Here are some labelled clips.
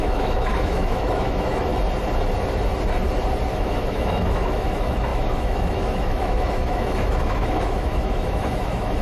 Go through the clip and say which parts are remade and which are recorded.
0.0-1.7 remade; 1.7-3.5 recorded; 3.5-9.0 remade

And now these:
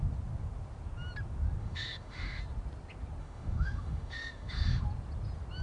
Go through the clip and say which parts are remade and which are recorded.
0.0-1.6 recorded; 1.6-2.4 remade; 2.4-3.2 recorded; 3.2-4.8 remade; 4.8-5.6 recorded

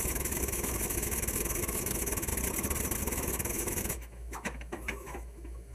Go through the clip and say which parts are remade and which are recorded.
0.0-2.3 remade; 2.3-3.1 recorded; 3.1-5.7 remade

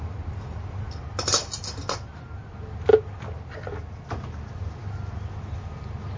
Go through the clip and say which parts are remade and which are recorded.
0.0-6.2 recorded